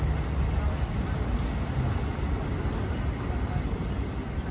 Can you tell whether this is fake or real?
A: real